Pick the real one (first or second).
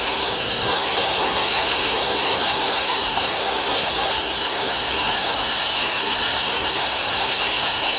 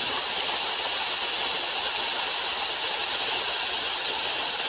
second